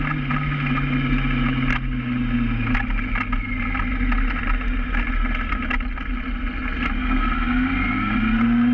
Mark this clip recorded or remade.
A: recorded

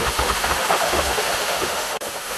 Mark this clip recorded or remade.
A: remade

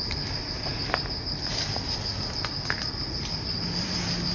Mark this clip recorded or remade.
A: recorded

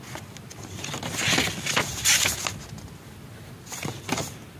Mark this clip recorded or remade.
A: recorded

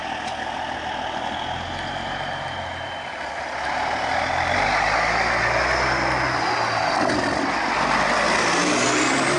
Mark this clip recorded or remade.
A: recorded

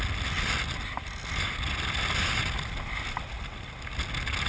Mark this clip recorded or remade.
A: recorded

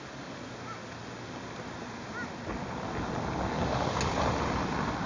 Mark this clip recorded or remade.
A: recorded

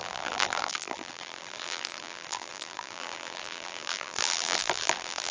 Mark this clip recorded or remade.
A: remade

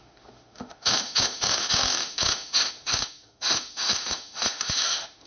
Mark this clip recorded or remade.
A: remade